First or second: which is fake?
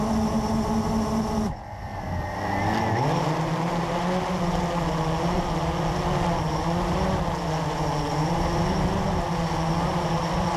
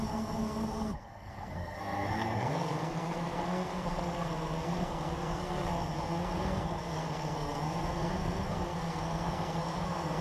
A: second